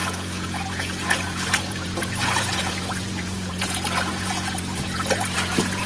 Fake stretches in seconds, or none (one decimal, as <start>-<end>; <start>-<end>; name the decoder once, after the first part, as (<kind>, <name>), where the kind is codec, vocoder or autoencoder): 0.0-5.9 (vocoder, Vocos)